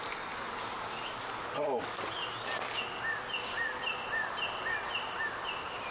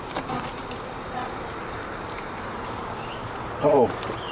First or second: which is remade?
second